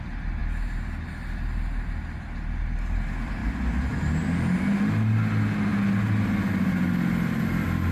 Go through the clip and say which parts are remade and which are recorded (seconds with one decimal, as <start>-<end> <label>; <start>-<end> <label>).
0.0-7.9 recorded